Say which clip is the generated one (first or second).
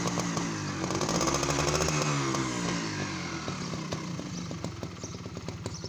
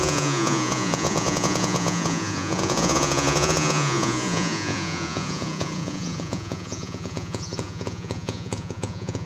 second